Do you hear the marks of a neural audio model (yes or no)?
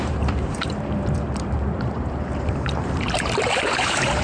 yes